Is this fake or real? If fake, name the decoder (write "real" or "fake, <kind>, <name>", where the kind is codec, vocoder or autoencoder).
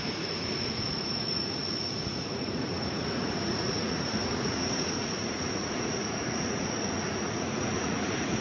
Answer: fake, vocoder, Vocos